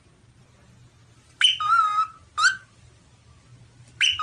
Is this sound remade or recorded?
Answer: recorded